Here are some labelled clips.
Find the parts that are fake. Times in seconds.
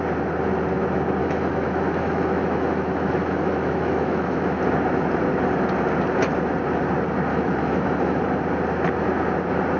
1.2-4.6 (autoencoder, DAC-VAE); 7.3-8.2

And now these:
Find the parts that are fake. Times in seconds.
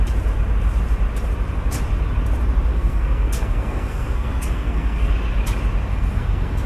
2.7-5.1 (codec, SNAC); 5.9-6.7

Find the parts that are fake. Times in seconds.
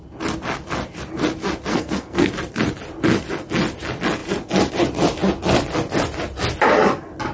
1.7-2.3 (codec, SNAC)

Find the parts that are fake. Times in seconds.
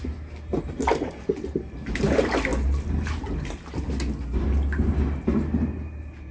none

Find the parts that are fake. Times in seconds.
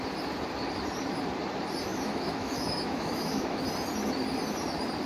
1.9-3.6 (autoencoder, DAC-VAE)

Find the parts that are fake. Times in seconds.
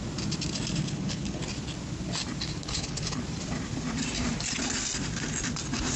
0.8-1.4 (codec, HILCodec); 2.6-3.2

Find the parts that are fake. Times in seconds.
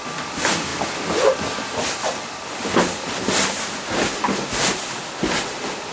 none